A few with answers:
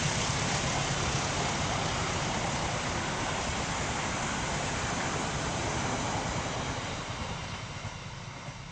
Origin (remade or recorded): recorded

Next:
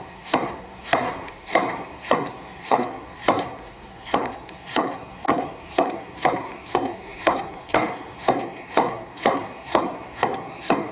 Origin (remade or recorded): remade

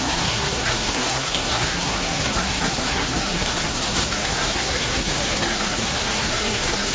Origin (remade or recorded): remade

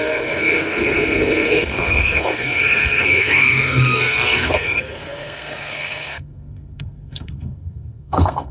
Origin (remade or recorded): remade